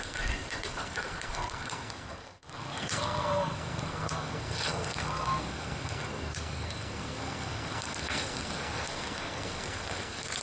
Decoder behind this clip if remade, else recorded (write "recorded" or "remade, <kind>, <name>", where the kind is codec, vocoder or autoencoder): remade, codec, SNAC